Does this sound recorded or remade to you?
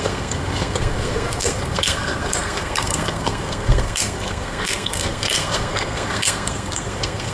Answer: remade